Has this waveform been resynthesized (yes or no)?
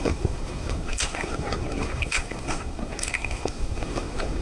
yes